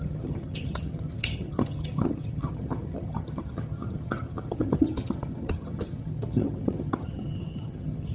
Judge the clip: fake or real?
fake